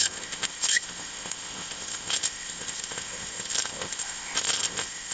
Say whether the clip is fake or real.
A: fake